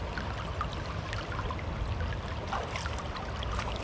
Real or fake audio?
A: real